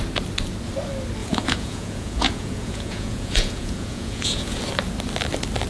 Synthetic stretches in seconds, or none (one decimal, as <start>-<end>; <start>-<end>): 1.2-4.6